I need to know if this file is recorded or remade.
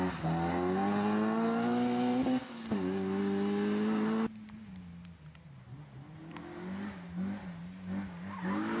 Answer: recorded